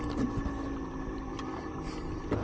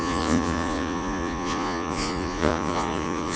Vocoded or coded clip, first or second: second